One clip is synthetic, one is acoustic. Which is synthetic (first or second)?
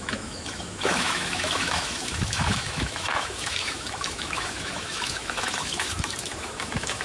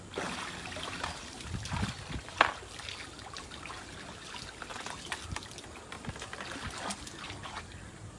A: first